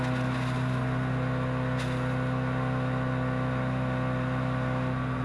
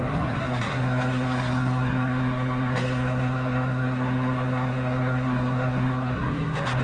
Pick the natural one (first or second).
first